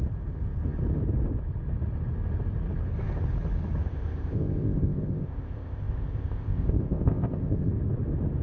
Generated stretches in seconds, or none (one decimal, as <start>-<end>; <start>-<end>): 3.8-7.7